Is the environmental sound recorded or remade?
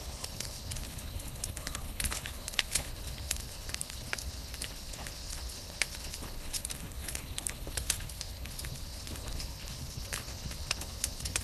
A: remade